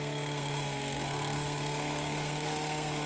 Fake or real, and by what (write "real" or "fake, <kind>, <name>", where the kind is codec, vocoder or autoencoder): fake, codec, SNAC